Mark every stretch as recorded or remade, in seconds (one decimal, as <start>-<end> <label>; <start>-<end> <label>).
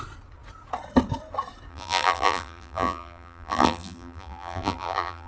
0.0-1.7 recorded; 1.7-5.3 remade